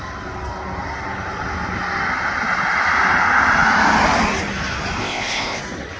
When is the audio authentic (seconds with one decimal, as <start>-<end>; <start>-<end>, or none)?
0.0-5.0; 5.6-6.0